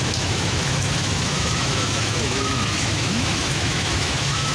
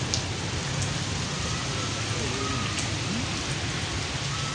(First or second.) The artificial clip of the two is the first